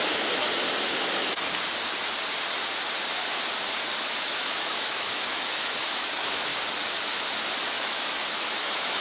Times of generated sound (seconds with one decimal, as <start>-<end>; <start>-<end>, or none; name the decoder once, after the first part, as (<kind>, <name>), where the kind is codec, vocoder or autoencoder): 0.0-0.4 (autoencoder, DAC-VAE); 4.0-6.5; 7.6-9.0